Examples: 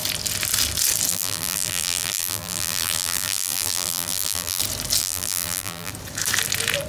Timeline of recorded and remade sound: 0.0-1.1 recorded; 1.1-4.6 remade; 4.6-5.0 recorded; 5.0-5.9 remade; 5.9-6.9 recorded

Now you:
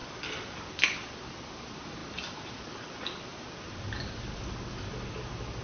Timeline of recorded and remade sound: 0.0-2.0 recorded; 2.0-2.6 remade; 2.6-3.3 recorded; 3.3-4.0 remade; 4.0-5.6 recorded

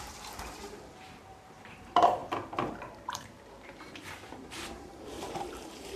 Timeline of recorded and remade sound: 0.0-6.0 remade

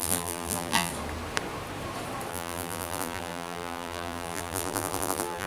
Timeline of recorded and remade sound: 0.0-0.9 remade; 0.9-2.3 recorded; 2.3-5.5 remade

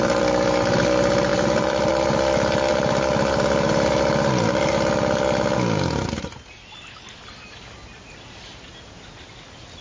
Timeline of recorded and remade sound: 0.0-1.3 recorded; 1.3-1.9 remade; 1.9-2.7 recorded; 2.7-3.7 remade; 3.7-9.8 recorded

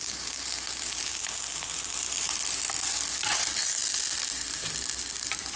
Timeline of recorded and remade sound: 0.0-5.6 recorded

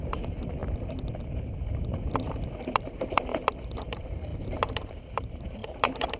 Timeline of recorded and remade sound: 0.0-0.6 remade; 0.6-2.0 recorded; 2.0-3.3 remade; 3.3-3.8 recorded; 3.8-6.2 remade